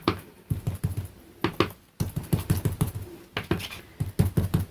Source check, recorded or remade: recorded